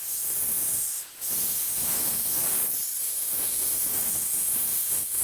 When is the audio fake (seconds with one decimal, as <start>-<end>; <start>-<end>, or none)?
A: 0.0-2.4; 3.0-5.2

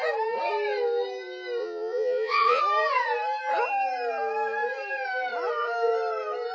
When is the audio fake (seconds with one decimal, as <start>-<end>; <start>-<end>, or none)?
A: 1.6-2.6

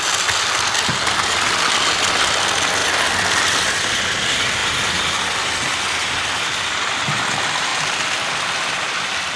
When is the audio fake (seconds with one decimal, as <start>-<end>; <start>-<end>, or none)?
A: none

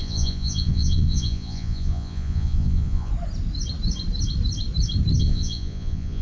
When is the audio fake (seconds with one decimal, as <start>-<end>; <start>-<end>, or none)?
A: 0.0-3.1; 5.2-6.2